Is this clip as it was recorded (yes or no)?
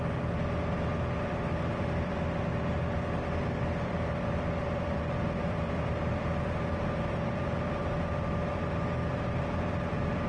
no